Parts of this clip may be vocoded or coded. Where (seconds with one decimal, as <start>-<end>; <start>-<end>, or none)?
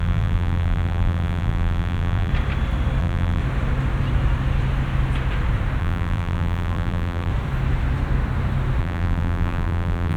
0.0-2.3; 3.0-3.4; 5.8-7.3; 8.8-10.2